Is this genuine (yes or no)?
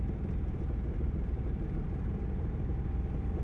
no